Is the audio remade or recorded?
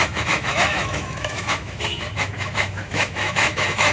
remade